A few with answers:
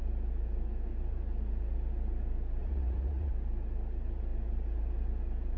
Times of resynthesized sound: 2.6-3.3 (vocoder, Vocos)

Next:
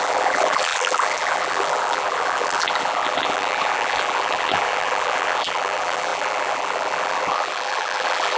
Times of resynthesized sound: 0.0-8.4 (vocoder, BigVGAN v2)

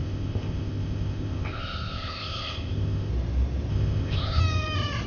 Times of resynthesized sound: 0.0-3.1 (codec, ZipCodec); 3.7-4.4

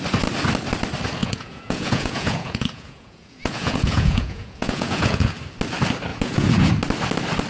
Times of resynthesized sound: 1.2-5.3 (vocoder, Vocos); 6.1-6.7

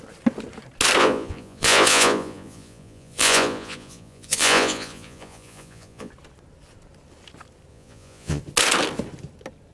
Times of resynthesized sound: 1.0-6.1 (vocoder, Vocos); 7.7-8.4